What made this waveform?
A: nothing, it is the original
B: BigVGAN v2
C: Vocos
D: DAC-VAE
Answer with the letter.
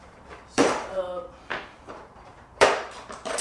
B